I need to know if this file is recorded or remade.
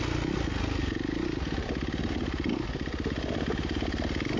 recorded